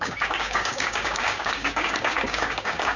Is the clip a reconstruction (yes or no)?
yes